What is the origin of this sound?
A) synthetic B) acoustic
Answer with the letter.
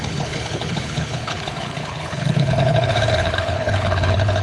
A